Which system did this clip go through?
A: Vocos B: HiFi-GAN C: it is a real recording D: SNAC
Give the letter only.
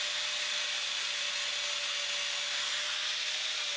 C